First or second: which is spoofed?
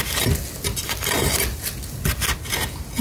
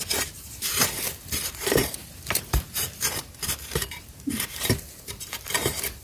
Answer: second